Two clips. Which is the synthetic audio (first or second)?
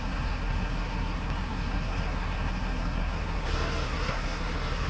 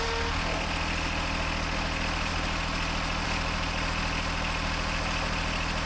first